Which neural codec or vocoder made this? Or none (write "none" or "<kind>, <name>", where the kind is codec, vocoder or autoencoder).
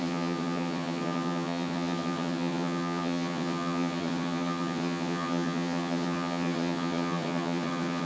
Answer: vocoder, HiFi-GAN